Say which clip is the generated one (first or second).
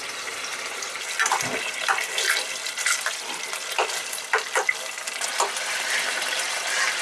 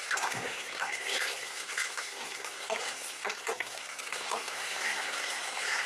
second